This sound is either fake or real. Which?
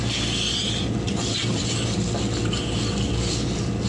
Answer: real